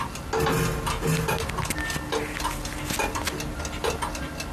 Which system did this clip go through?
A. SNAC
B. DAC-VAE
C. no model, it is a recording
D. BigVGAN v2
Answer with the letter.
C